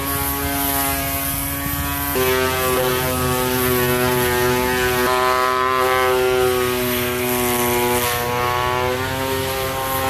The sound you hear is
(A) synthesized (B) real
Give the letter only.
B